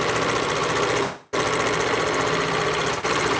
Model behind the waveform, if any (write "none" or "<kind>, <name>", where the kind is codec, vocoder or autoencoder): none